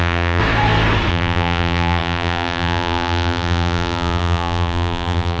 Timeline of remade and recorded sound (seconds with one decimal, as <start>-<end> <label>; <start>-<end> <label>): 0.0-0.4 remade; 0.4-1.1 recorded; 1.1-5.4 remade